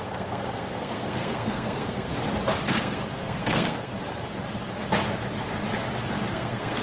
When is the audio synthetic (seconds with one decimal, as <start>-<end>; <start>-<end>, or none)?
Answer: 0.0-2.1; 2.7-3.9; 6.3-6.8